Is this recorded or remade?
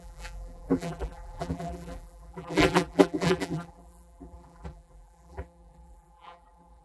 remade